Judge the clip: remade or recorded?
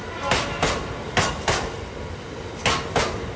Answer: recorded